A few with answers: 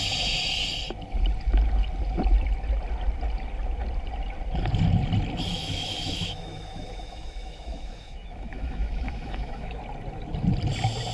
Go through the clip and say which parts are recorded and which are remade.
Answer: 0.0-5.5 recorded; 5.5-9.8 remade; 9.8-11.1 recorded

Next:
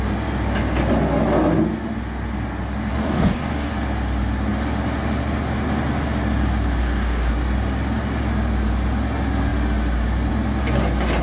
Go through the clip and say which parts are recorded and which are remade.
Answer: 0.0-2.9 recorded; 2.9-3.7 remade; 3.7-6.8 recorded; 6.8-7.3 remade; 7.3-11.2 recorded

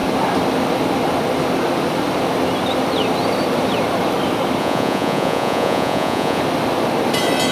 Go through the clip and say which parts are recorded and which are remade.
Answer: 0.0-4.6 recorded; 4.6-6.4 remade; 6.4-7.5 recorded